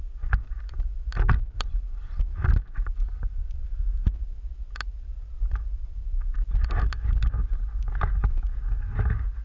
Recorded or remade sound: recorded